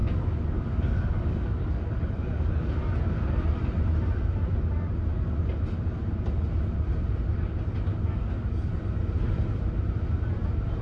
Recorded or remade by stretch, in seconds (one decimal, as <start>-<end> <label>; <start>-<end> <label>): 0.0-2.5 remade; 2.5-7.9 recorded; 7.9-8.7 remade; 8.7-10.8 recorded